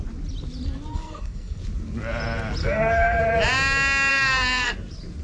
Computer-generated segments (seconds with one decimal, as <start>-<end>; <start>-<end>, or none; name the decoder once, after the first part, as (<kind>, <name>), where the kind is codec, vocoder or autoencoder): 0.9-1.6 (codec, SNAC); 2.6-3.2; 4.1-4.7